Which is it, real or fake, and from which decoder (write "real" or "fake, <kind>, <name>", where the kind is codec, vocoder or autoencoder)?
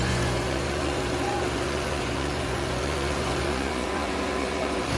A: fake, vocoder, Vocos